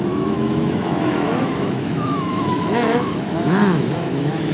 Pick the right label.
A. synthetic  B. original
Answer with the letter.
A